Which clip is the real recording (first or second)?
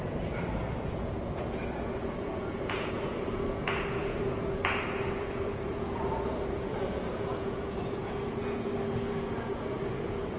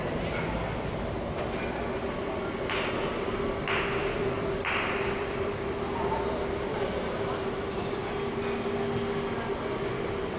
second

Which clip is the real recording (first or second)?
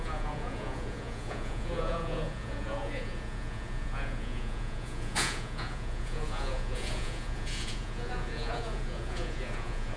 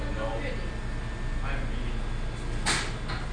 second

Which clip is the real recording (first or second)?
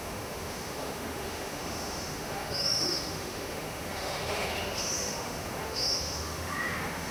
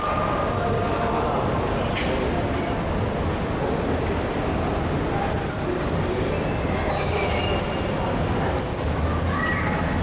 second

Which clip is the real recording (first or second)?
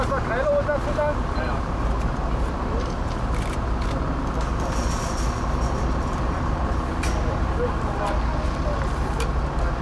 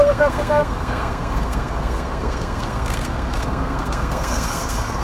first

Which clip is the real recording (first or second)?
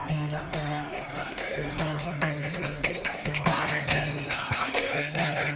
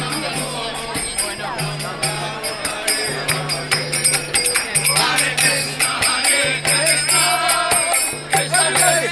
second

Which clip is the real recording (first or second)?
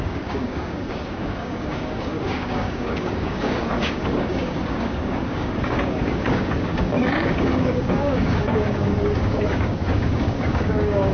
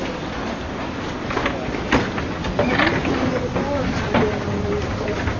second